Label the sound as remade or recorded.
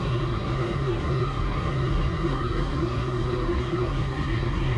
remade